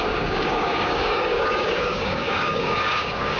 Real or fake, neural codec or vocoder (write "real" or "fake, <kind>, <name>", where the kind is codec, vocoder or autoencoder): fake, codec, DAC